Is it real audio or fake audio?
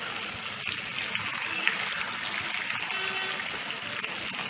real